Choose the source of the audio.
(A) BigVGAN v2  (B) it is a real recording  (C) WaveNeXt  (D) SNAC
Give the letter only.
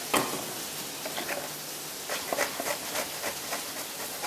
B